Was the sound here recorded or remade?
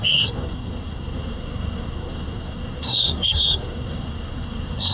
remade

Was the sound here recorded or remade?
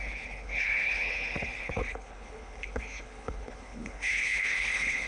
remade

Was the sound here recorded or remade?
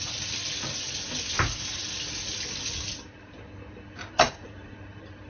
recorded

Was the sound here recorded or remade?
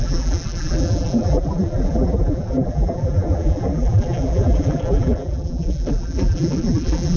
remade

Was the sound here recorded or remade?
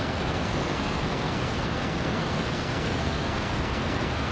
remade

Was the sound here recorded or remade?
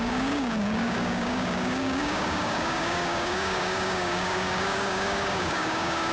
remade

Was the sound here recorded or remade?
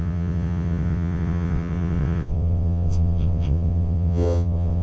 remade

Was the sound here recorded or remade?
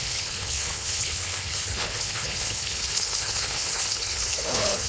remade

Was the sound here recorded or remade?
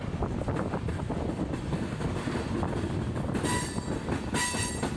recorded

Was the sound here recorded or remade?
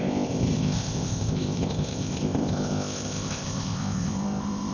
remade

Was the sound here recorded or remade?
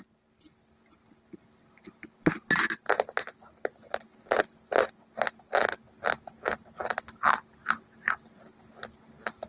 recorded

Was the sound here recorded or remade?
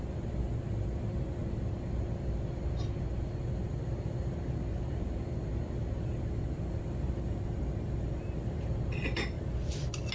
recorded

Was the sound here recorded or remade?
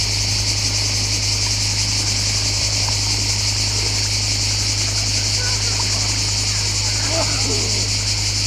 recorded